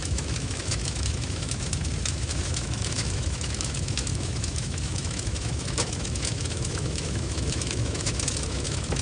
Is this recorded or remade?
remade